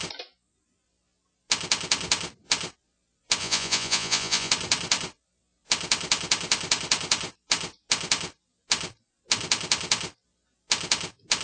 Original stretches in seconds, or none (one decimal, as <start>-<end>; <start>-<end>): 0.0-3.4; 4.5-11.4